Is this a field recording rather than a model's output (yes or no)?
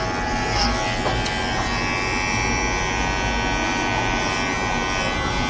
yes